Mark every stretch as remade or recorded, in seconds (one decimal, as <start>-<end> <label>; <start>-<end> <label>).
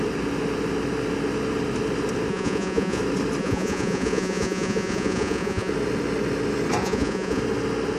0.0-2.3 recorded; 2.3-3.0 remade; 3.0-3.4 recorded; 3.4-5.7 remade; 5.7-6.8 recorded; 6.8-7.4 remade; 7.4-8.0 recorded